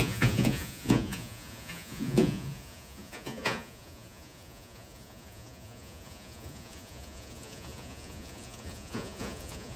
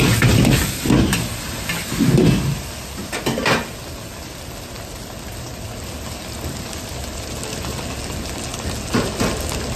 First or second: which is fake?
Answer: first